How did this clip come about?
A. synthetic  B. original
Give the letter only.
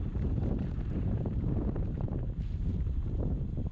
A